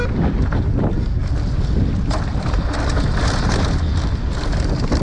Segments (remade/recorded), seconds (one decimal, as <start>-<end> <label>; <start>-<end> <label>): 0.0-5.0 recorded